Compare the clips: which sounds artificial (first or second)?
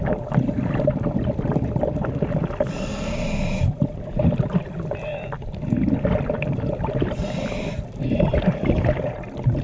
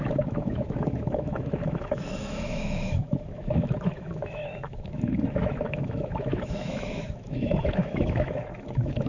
second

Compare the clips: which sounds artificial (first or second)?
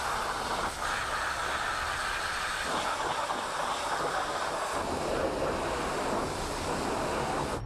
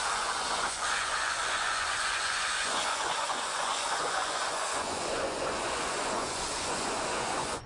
second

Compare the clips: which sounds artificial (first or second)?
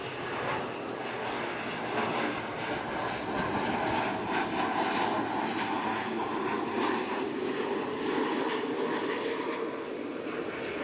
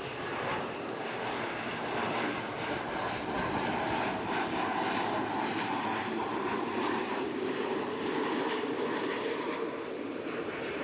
second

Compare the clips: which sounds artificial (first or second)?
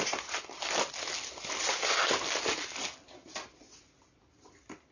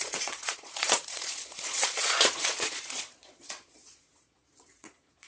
second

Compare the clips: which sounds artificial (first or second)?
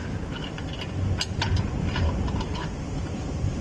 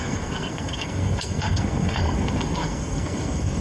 second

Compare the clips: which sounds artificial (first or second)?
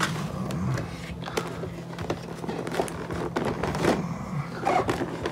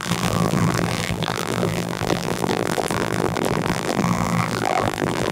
second